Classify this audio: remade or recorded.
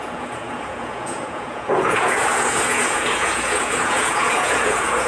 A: remade